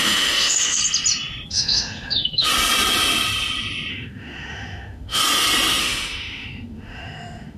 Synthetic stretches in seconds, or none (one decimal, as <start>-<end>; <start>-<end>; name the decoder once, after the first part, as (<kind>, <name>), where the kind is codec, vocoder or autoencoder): 0.0-0.8 (autoencoder, DAC-VAE); 1.5-2.5; 3.9-5.2; 5.8-7.6